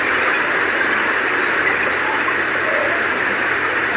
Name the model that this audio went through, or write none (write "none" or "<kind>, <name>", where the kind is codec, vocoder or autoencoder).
none